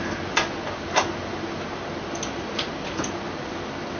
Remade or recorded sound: recorded